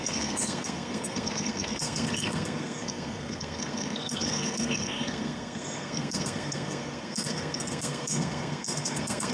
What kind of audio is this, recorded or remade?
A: remade